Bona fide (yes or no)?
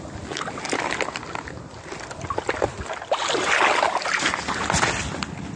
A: yes